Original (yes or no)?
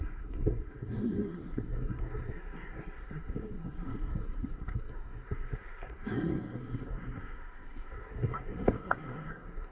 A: no